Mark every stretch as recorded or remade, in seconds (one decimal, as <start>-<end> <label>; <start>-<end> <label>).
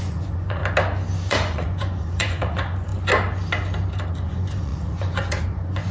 0.0-0.6 remade; 0.6-1.3 recorded; 1.3-2.9 remade; 2.9-4.1 recorded; 4.1-5.9 remade